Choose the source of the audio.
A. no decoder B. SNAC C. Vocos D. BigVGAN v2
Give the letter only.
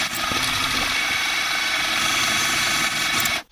A